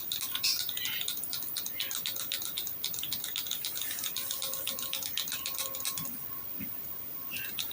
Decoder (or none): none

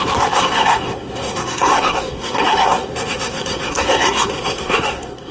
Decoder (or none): codec, SNAC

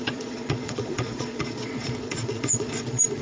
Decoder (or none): vocoder, Vocos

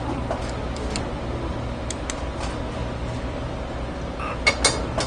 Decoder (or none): none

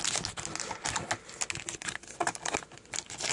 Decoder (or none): none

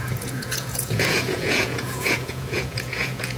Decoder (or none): vocoder, Vocos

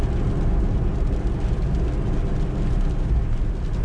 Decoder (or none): none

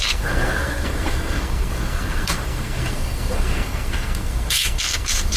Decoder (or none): codec, SNAC